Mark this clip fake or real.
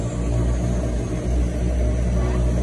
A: real